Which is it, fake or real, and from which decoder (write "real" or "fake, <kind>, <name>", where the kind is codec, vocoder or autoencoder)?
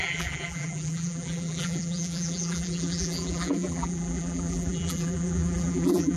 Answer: fake, vocoder, BigVGAN v2